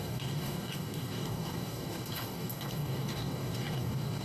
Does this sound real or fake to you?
fake